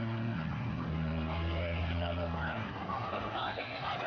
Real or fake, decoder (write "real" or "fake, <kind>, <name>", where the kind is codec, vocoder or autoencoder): fake, codec, SNAC